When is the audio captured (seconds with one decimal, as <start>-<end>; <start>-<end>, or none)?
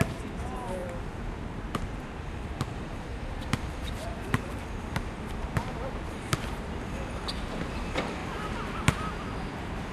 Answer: 3.1-3.6; 8.2-9.5